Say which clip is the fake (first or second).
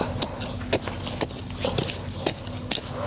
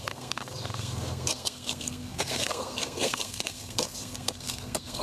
second